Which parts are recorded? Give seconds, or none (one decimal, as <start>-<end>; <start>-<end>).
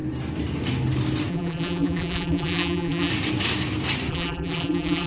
0.0-1.3; 3.1-4.1